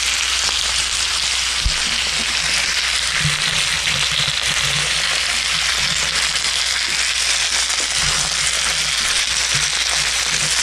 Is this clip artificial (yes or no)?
no